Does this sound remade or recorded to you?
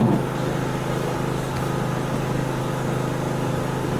recorded